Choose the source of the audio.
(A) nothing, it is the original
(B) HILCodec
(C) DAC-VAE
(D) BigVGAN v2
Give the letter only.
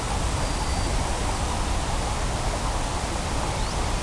A